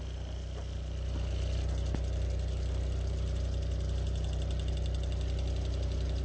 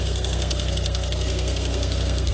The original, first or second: first